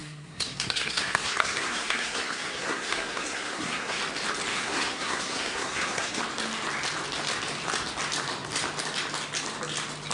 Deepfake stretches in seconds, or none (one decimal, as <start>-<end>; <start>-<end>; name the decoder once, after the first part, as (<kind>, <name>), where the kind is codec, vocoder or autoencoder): 0.0-4.0 (codec, SNAC); 4.5-6.2